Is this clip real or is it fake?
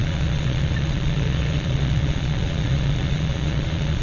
fake